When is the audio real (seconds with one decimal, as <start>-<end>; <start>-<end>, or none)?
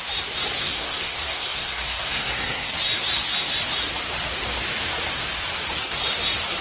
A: 0.0-0.6; 2.7-6.6